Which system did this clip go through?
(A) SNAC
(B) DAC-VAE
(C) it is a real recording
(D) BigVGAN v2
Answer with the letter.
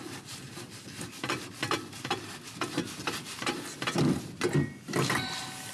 C